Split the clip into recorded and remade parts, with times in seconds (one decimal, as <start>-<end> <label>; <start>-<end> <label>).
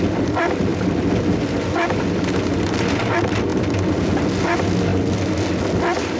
0.0-3.5 recorded; 3.5-4.1 remade; 4.1-6.2 recorded